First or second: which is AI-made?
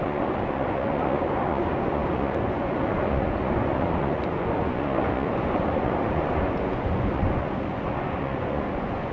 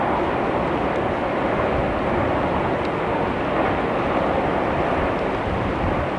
first